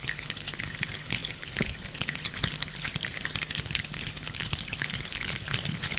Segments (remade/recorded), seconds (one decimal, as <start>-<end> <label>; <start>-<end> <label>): 0.0-2.9 remade; 2.9-3.5 recorded; 3.5-6.0 remade